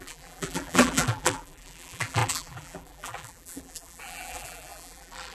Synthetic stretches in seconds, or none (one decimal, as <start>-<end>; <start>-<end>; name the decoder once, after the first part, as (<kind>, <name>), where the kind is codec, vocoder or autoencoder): 0.0-5.3 (vocoder, BigVGAN v2)